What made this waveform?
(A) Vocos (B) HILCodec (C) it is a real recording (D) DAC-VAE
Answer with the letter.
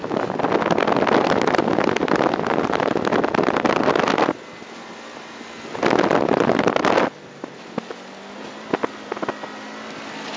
C